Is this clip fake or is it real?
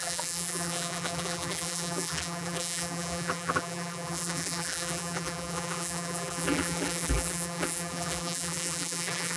fake